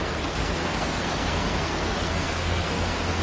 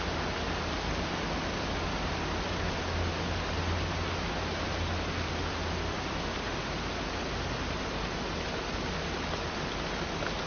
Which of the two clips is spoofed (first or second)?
first